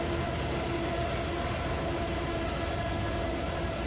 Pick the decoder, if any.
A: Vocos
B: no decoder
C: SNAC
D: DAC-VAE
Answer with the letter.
B